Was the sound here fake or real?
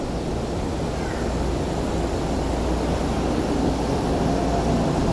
real